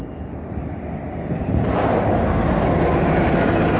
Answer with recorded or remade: recorded